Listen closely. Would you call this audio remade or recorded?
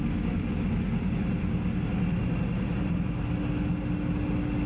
recorded